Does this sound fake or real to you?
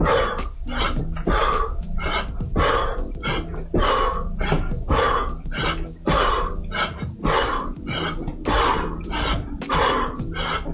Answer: real